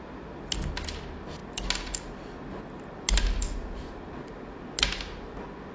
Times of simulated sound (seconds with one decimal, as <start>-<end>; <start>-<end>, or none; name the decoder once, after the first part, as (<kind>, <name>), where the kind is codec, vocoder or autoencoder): none